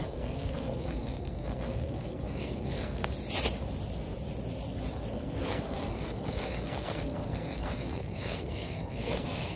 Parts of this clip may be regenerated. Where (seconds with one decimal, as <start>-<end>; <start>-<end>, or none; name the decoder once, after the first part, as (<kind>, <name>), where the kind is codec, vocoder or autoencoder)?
0.0-3.0 (codec, SNAC); 5.1-9.6